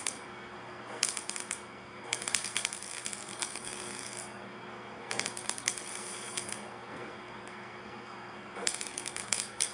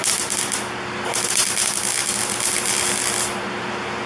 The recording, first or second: second